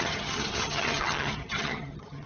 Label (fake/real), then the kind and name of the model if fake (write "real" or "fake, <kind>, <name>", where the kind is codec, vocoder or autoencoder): fake, vocoder, HiFi-GAN